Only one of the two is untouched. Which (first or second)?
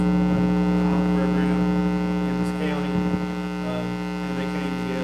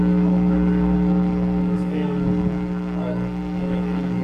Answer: first